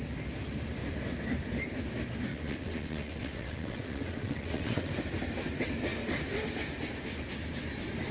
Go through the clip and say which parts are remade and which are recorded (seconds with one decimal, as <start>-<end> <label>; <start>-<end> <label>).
0.0-2.3 recorded; 2.3-4.9 remade; 4.9-8.1 recorded